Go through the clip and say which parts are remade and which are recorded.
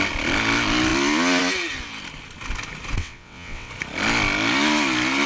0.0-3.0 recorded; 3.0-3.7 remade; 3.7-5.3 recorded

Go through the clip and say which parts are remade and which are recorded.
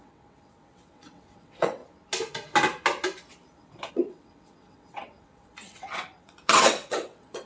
0.0-1.8 remade; 1.8-3.9 recorded; 3.9-7.5 remade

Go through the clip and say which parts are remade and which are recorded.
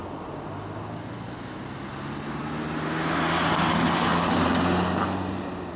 0.0-5.8 recorded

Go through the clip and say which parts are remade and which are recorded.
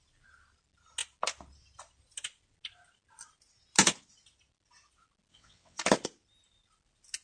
0.0-5.3 recorded; 5.3-5.8 remade; 5.8-7.2 recorded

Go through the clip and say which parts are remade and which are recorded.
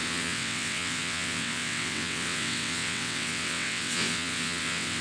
0.0-5.0 remade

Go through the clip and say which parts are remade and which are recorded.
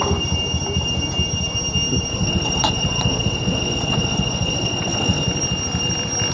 0.0-2.1 recorded; 2.1-5.2 remade; 5.2-6.3 recorded